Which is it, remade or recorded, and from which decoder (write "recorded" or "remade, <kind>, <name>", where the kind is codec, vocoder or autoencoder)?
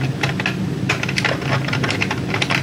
recorded